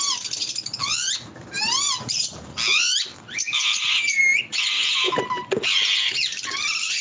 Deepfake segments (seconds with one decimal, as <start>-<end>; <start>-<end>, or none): none